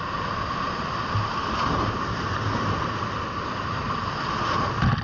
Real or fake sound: real